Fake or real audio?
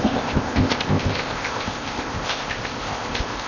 fake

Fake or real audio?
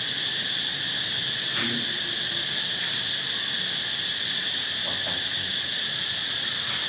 real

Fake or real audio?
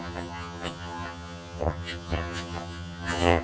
fake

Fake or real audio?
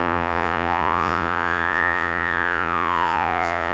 fake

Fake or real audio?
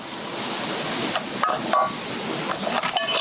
real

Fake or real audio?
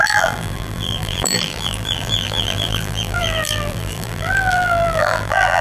fake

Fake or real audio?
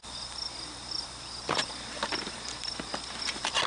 fake